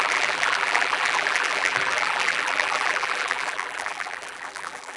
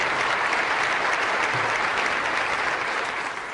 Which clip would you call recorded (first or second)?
second